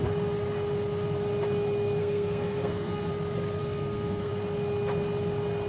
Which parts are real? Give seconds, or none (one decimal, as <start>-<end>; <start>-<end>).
0.0-2.0; 3.1-3.6; 4.3-5.7